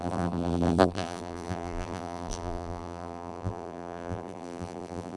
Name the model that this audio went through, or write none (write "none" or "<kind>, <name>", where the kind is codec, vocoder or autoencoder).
vocoder, BigVGAN v2